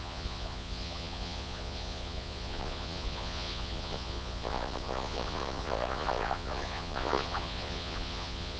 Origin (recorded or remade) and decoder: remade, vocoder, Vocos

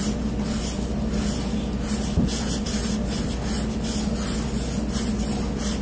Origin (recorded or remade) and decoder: recorded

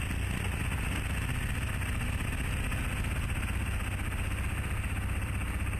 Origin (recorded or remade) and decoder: recorded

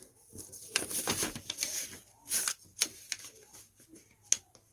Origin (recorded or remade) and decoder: remade, vocoder, BigVGAN v2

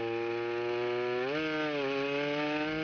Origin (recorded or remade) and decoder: recorded